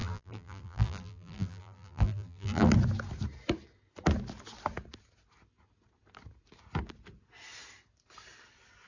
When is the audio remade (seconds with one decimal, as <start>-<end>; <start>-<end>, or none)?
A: 0.0-2.7